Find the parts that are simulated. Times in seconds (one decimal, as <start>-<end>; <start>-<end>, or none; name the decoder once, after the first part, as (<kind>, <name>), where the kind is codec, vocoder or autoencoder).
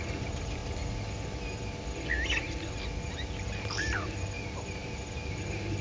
0.0-0.6 (vocoder, BigVGAN v2); 3.1-5.8